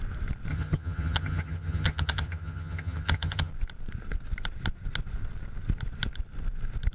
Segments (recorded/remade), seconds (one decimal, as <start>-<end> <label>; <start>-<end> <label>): 0.0-0.5 recorded; 0.5-3.5 remade; 3.5-6.9 recorded